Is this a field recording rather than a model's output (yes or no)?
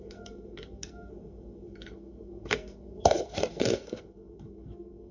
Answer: no